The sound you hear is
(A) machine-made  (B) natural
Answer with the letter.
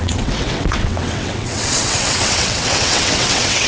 A